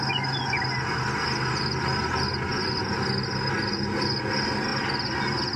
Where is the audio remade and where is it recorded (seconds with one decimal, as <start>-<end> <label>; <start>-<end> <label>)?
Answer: 0.0-5.6 recorded